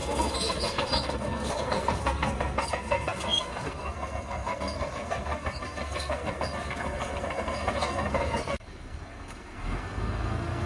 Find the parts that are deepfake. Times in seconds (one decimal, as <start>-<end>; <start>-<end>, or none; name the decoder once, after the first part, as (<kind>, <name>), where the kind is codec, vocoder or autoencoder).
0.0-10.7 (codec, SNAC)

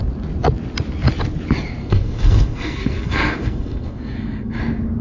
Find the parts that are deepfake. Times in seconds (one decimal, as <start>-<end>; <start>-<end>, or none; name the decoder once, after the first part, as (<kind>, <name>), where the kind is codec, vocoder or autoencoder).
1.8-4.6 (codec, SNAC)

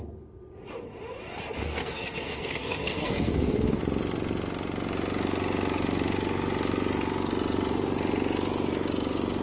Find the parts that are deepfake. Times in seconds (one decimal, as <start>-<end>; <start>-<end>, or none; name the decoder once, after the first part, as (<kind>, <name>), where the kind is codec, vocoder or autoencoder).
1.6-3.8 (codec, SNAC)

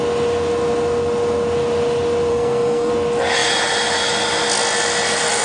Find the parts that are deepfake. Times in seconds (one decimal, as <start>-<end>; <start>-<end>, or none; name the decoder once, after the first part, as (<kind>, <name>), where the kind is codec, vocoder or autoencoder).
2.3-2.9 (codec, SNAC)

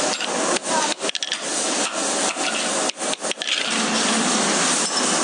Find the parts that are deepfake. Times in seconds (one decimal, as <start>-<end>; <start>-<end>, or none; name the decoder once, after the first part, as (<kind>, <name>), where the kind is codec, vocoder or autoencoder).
none